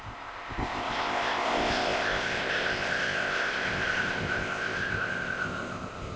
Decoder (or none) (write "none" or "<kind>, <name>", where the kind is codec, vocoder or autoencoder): codec, ZipCodec